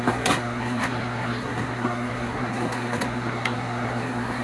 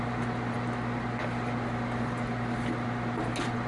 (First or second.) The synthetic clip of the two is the first